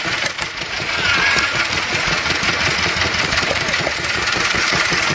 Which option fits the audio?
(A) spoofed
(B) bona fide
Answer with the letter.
A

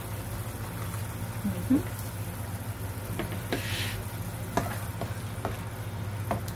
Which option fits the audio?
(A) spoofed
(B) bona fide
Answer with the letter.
B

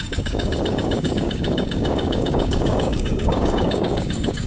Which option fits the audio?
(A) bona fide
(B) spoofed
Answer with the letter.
B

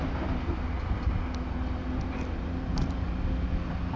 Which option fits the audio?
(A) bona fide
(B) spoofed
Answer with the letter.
A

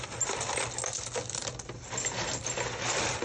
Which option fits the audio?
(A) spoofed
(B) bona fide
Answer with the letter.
B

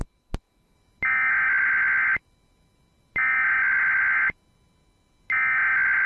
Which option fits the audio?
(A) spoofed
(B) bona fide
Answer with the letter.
B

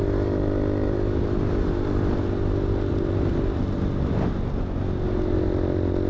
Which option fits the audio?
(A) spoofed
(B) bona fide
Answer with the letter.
B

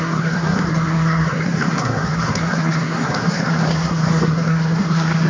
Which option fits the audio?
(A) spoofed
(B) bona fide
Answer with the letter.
A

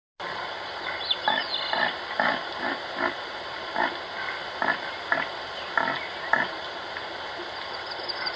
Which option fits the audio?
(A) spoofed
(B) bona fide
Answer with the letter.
B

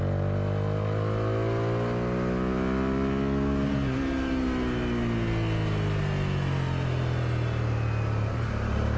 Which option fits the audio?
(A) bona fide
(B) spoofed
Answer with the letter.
A